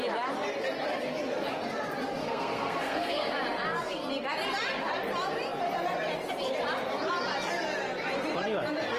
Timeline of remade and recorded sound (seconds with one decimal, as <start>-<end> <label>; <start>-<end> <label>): 0.0-2.2 recorded; 2.2-3.3 remade; 3.3-9.0 recorded